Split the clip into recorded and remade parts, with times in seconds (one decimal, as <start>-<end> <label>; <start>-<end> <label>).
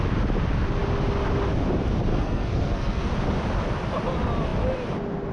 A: 0.0-2.1 recorded; 2.1-3.1 remade; 3.1-5.3 recorded